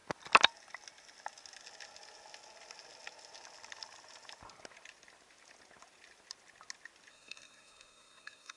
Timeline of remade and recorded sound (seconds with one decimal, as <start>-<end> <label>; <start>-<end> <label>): 0.0-7.1 recorded; 7.1-8.6 remade